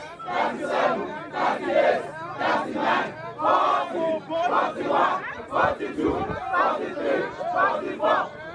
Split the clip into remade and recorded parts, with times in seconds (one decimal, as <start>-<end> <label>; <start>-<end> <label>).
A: 0.0-8.5 recorded